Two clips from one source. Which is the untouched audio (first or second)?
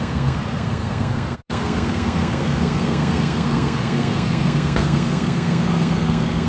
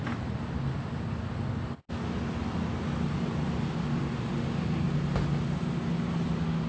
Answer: second